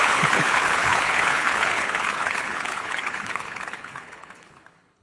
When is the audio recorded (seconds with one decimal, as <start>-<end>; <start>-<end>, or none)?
none